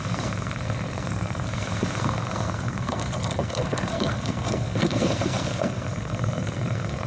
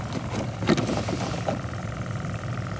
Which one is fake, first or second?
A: first